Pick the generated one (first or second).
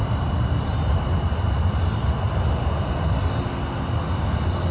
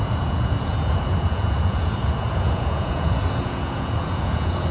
second